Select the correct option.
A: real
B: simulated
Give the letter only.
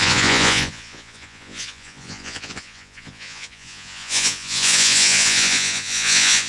B